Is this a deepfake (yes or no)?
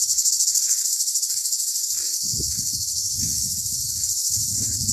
yes